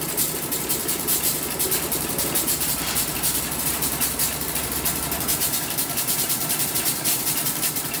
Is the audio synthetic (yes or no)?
yes